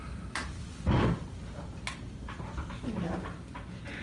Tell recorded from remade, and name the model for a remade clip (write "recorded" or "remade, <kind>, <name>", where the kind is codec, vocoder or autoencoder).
recorded